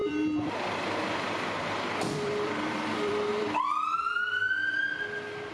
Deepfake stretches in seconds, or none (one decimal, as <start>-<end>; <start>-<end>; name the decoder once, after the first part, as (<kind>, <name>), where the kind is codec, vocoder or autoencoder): 0.0-4.6 (vocoder, BigVGAN v2)